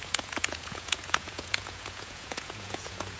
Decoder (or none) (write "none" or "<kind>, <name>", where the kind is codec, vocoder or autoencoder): vocoder, Vocos